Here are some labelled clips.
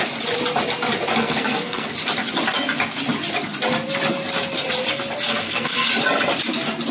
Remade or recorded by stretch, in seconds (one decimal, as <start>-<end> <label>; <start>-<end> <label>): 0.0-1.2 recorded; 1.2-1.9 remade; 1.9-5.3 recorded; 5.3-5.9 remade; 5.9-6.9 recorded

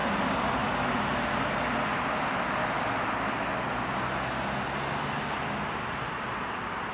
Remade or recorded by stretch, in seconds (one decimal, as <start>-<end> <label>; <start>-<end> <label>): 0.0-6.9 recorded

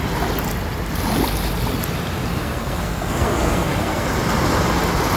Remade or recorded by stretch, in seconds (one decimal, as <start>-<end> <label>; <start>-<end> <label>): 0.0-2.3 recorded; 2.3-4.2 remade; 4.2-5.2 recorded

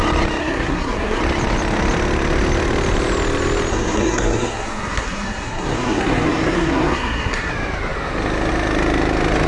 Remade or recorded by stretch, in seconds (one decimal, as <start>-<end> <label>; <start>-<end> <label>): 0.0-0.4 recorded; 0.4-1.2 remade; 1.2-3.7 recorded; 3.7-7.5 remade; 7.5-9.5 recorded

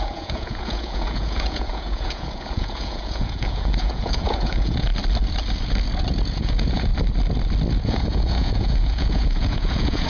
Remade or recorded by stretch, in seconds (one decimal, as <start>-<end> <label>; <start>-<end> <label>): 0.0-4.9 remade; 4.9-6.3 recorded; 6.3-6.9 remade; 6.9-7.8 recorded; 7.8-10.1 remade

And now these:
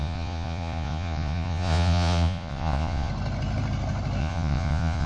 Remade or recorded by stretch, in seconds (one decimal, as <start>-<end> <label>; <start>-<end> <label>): 0.0-3.1 remade; 3.1-4.2 recorded; 4.2-5.1 remade